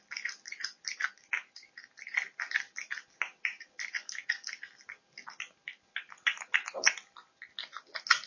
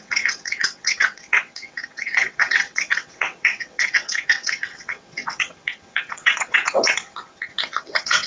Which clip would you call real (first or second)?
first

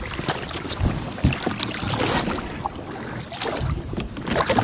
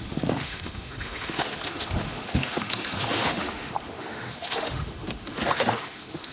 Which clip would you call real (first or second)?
first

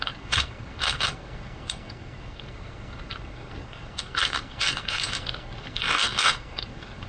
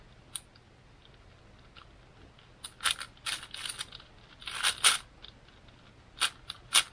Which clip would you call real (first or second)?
second